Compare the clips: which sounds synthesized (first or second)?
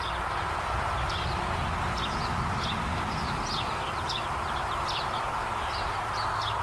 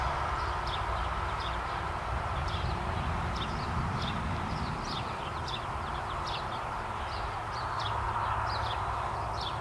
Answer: second